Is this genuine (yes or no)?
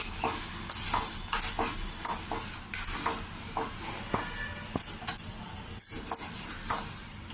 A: yes